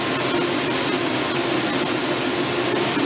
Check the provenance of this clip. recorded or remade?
recorded